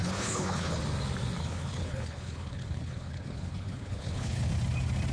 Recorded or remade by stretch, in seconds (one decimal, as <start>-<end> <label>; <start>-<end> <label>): 0.0-0.8 remade; 0.8-1.4 recorded; 1.4-4.5 remade; 4.5-5.1 recorded